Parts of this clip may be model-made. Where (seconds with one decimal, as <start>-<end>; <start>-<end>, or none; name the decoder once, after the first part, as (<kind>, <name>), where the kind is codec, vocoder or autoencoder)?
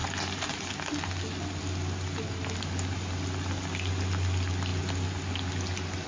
none